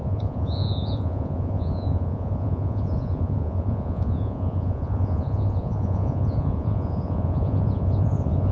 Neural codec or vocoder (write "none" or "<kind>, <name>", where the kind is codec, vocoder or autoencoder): vocoder, Vocos